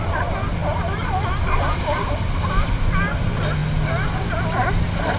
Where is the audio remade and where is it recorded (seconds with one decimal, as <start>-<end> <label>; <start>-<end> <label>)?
0.0-5.2 recorded